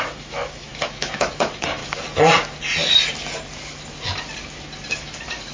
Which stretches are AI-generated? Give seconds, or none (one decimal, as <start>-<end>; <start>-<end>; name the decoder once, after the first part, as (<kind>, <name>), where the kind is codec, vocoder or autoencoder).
0.0-1.8 (autoencoder, DAC-VAE); 4.9-5.5